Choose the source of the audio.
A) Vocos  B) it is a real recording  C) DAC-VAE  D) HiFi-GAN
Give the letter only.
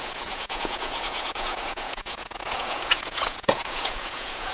A